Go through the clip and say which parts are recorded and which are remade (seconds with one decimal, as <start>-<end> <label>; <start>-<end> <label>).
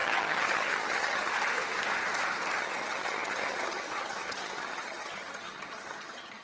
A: 0.0-1.3 remade; 1.3-2.6 recorded; 2.6-6.4 remade